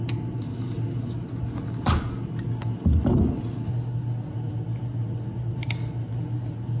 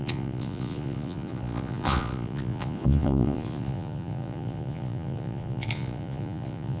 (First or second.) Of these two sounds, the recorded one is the first